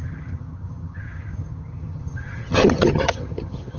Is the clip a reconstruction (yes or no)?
yes